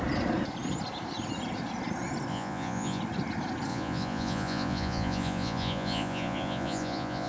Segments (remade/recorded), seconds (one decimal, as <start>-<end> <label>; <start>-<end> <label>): 0.0-2.3 recorded; 2.3-3.0 remade; 3.0-3.7 recorded; 3.7-7.3 remade

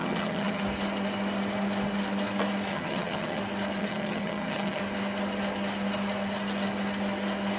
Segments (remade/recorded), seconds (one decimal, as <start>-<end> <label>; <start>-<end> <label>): 0.0-0.6 remade; 0.6-2.7 recorded; 2.7-3.4 remade; 3.4-3.8 recorded; 3.8-4.8 remade; 4.8-7.6 recorded